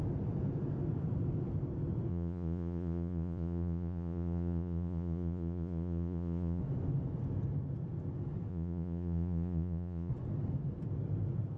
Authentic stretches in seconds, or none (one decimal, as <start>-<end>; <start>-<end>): 0.0-2.1; 6.6-8.5; 10.1-11.6